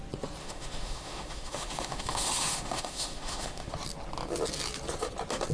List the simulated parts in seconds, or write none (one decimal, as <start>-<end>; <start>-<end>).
0.4-3.7